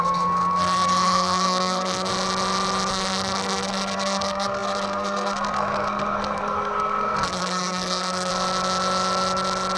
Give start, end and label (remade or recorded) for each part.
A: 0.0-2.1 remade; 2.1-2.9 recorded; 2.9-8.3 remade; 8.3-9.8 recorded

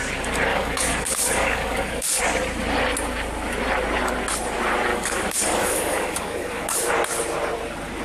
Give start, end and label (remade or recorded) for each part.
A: 0.0-0.5 recorded; 0.5-2.2 remade; 2.2-4.9 recorded; 4.9-6.9 remade; 6.9-8.0 recorded

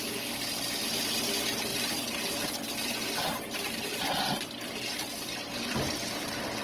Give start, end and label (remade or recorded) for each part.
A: 0.0-6.6 recorded

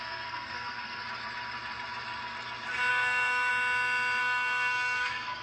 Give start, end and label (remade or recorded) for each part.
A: 0.0-1.0 remade; 1.0-2.9 recorded; 2.9-3.5 remade; 3.5-4.2 recorded; 4.2-5.4 remade